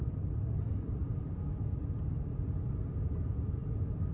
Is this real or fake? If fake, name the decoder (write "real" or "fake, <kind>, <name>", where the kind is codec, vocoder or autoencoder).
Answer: real